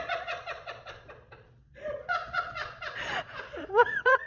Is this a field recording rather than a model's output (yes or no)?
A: no